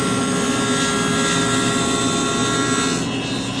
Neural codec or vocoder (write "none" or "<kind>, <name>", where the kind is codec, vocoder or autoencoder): none